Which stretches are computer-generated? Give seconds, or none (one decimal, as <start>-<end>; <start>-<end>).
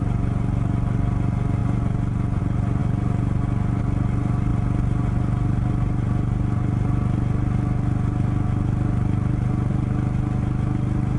none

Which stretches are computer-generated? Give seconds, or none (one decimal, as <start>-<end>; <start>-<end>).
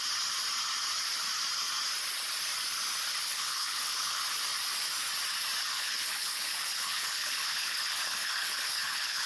3.2-4.2; 5.6-9.3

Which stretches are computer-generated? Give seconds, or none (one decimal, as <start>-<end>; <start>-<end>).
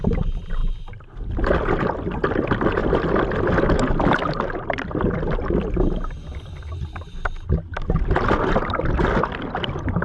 none